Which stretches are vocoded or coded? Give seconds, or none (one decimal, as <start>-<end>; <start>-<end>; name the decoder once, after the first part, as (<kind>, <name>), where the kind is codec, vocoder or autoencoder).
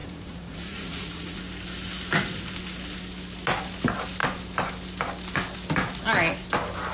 0.0-1.4 (vocoder, Vocos)